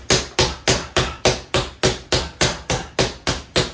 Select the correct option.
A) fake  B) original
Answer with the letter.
B